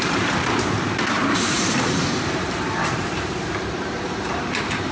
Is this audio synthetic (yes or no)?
yes